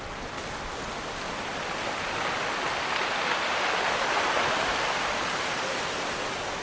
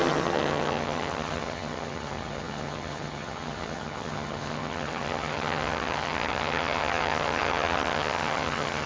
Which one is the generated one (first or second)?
second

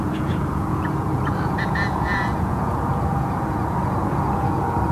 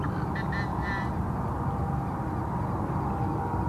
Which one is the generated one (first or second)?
first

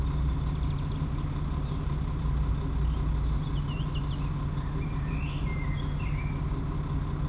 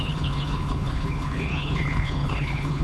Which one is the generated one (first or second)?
second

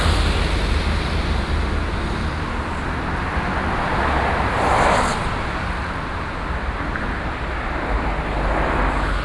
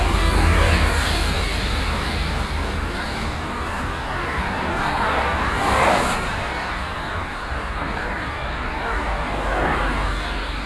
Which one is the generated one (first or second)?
second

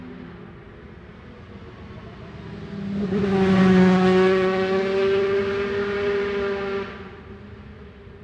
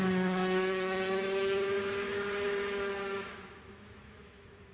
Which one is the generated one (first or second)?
second